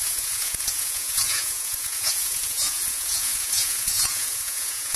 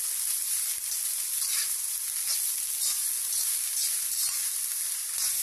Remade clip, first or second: first